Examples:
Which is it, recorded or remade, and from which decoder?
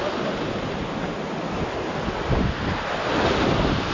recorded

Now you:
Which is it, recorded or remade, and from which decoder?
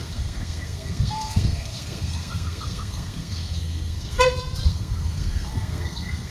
remade, codec, SNAC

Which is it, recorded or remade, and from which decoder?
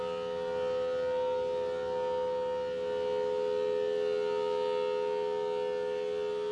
recorded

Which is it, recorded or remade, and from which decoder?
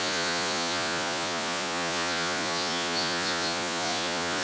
remade, vocoder, Vocos